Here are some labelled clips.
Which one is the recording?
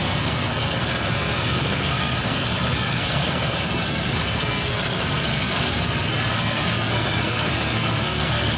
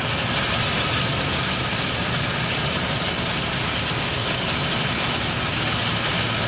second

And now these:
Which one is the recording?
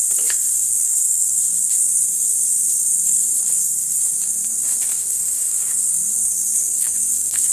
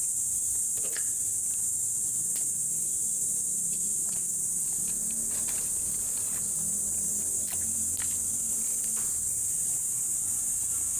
second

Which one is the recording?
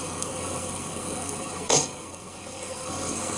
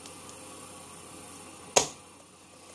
second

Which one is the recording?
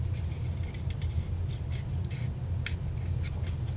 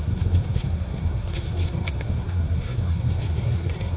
first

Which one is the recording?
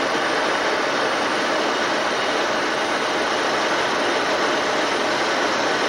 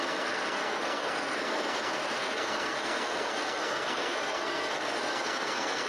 first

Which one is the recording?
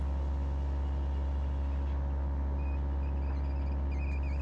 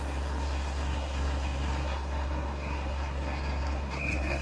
first